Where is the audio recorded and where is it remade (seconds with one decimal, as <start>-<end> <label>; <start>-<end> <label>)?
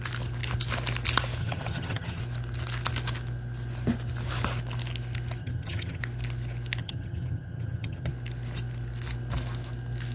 0.0-1.4 recorded; 1.4-2.2 remade; 2.2-5.4 recorded; 5.4-6.0 remade; 6.0-6.8 recorded; 6.8-8.1 remade; 8.1-10.1 recorded